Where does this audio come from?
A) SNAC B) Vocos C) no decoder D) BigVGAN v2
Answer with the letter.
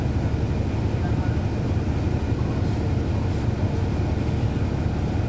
C